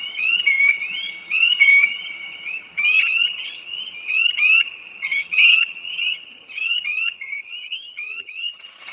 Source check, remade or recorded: remade